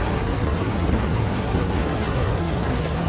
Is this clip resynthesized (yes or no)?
yes